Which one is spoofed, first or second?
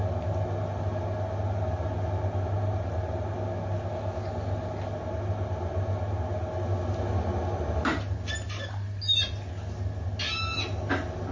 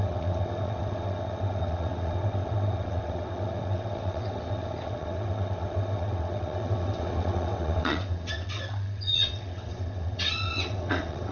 second